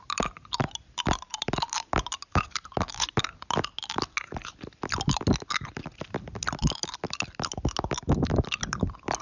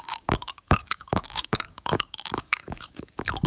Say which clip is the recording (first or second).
first